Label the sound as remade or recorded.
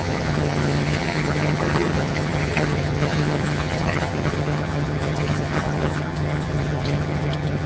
remade